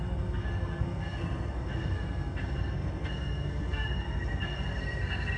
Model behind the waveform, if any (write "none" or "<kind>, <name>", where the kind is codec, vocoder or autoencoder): codec, SNAC